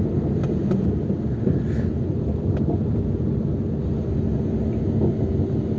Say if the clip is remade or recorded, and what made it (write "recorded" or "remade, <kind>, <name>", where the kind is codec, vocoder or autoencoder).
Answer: recorded